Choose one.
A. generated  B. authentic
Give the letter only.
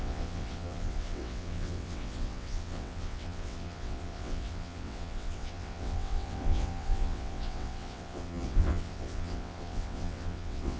A